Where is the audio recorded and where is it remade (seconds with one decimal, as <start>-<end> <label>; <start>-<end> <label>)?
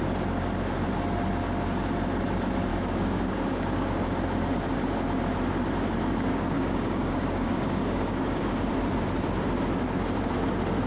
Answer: 0.0-2.7 recorded; 2.7-3.9 remade; 3.9-6.3 recorded; 6.3-8.7 remade; 8.7-10.9 recorded